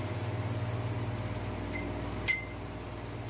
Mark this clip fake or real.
real